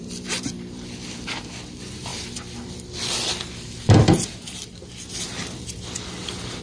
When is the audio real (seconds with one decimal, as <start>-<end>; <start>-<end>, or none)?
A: 2.1-5.2